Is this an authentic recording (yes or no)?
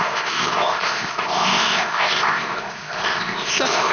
no